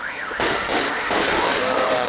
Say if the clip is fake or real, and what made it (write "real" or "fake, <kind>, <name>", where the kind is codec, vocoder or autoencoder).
fake, autoencoder, DAC-VAE